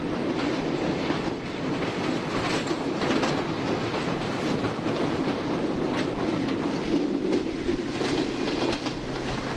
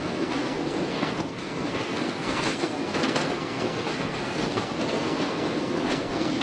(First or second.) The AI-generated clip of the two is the second